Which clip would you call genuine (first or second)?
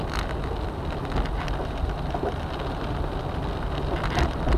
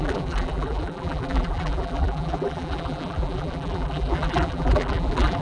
first